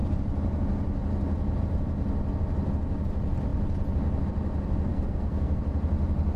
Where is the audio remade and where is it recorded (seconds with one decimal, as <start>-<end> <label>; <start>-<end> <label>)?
0.0-4.9 recorded; 4.9-5.6 remade; 5.6-6.4 recorded